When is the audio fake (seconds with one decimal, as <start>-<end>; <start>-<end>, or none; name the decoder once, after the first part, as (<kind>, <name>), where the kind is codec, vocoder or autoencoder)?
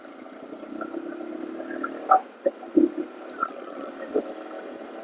3.4-3.9 (vocoder, HiFi-GAN)